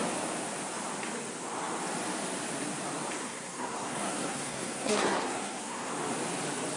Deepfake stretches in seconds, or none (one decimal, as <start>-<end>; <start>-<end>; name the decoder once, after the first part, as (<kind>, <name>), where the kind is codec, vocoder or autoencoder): 3.2-5.9 (codec, SNAC)